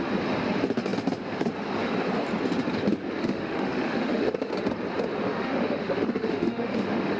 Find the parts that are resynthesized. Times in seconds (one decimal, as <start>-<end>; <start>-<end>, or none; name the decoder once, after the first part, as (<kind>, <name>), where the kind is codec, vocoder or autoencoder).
3.2-4.5 (autoencoder, DAC-VAE); 5.2-7.2